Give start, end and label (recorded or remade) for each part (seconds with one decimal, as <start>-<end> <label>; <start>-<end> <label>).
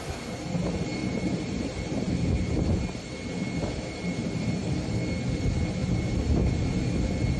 0.0-1.0 recorded; 1.0-2.1 remade; 2.1-4.2 recorded; 4.2-4.9 remade; 4.9-7.4 recorded